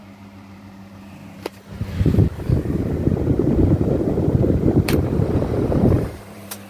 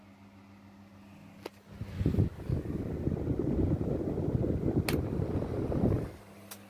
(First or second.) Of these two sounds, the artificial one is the first